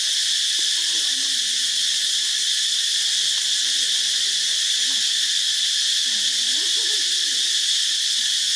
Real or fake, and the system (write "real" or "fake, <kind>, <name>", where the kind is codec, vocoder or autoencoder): real